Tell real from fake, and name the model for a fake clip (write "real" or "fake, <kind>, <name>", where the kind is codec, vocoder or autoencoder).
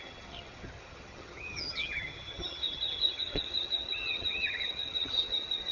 fake, vocoder, HiFi-GAN